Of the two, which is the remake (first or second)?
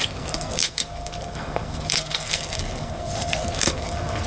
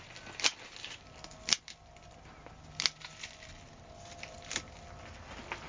first